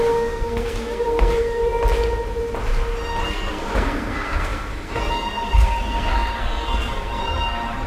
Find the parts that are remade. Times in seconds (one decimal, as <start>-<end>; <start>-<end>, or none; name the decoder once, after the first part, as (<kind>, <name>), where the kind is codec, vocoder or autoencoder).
0.0-1.7 (codec, SNAC); 3.2-7.9